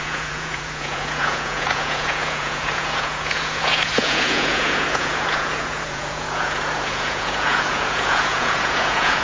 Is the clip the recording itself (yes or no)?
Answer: no